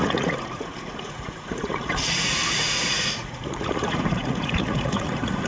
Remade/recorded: remade